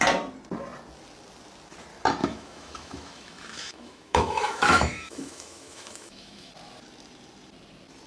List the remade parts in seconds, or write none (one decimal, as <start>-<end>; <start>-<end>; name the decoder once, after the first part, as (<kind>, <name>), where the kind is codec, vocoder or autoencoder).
2.2-6.5 (autoencoder, DAC-VAE)